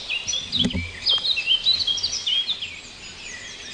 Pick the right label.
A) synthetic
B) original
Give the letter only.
B